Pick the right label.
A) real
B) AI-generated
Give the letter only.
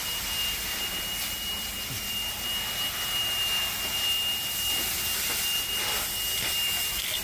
A